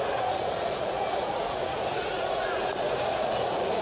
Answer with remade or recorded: remade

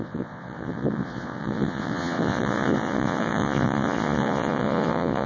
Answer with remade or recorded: remade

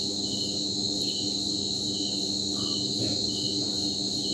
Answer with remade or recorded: recorded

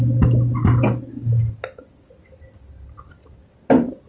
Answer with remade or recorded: recorded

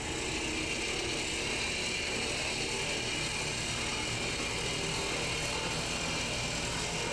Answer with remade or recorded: recorded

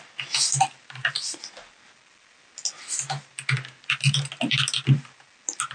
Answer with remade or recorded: recorded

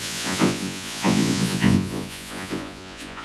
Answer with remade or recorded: remade